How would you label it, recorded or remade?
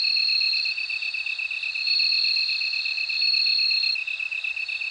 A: recorded